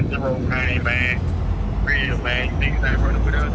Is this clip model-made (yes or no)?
no